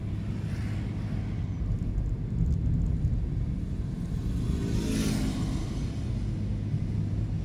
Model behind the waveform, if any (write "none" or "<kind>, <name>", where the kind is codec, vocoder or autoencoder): none